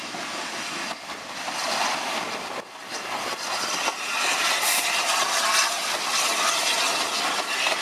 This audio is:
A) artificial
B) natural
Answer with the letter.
B